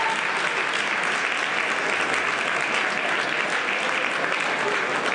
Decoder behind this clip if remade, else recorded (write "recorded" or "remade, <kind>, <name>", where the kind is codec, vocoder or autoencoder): recorded